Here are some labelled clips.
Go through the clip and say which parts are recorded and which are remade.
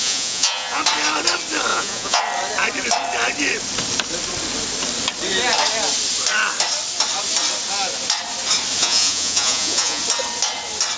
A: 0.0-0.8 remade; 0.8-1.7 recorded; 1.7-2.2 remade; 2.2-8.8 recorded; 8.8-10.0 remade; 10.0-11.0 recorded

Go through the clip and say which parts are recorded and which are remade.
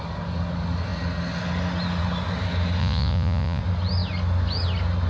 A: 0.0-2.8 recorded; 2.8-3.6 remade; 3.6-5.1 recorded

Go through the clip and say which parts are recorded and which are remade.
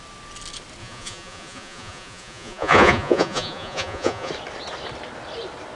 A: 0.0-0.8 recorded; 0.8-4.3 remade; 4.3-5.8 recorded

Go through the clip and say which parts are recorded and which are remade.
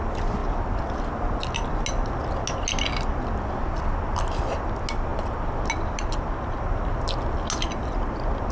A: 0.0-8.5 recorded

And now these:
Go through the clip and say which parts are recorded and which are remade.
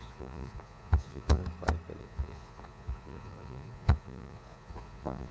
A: 0.0-1.4 remade; 1.4-2.0 recorded; 2.0-5.3 remade